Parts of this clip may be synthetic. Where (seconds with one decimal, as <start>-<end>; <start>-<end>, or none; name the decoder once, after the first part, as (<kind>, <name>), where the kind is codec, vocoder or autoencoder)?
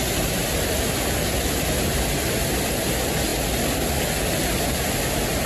none